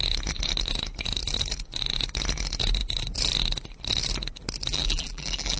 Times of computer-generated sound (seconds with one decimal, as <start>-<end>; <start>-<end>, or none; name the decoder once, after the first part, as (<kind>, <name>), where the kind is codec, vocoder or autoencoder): 4.7-5.6 (vocoder, BigVGAN v2)